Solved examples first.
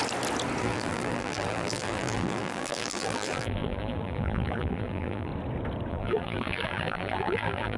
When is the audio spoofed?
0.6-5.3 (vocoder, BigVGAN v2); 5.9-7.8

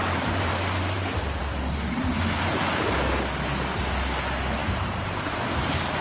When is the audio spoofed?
0.0-2.8 (vocoder, BigVGAN v2); 4.6-5.4

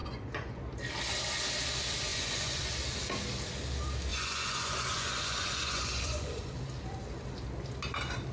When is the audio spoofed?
0.0-0.6 (vocoder, Vocos); 2.1-2.6; 4.1-6.5